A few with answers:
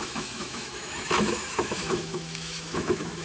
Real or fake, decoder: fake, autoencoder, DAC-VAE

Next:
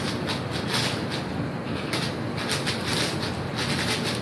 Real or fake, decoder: real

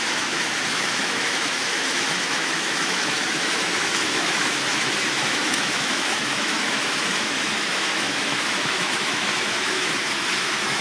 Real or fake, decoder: fake, autoencoder, DAC-VAE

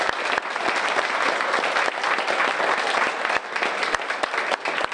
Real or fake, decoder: real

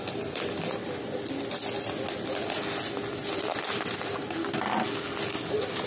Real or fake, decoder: real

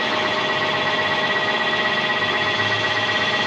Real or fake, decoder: fake, autoencoder, DAC-VAE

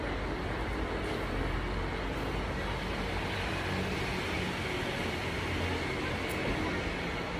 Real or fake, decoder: real